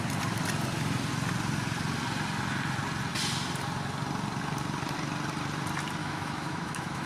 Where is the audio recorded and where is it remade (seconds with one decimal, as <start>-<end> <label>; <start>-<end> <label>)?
0.0-6.0 recorded; 6.0-7.1 remade